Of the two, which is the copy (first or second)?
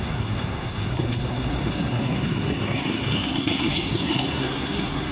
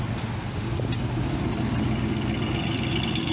first